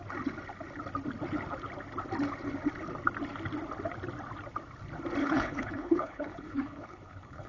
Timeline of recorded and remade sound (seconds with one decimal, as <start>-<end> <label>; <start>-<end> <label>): 0.0-5.2 recorded; 5.2-7.5 remade